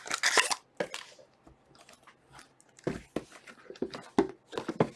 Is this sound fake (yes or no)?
no